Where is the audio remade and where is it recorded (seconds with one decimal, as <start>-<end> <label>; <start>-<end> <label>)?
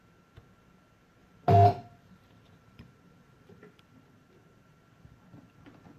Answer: 0.0-1.2 recorded; 1.2-3.8 remade; 3.8-6.0 recorded